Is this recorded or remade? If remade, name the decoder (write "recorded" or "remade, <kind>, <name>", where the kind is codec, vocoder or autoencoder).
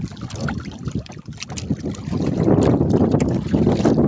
recorded